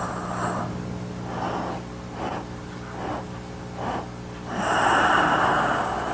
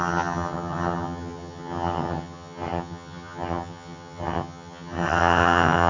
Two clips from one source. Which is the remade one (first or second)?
second